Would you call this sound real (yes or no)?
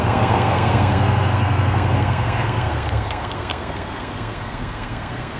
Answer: no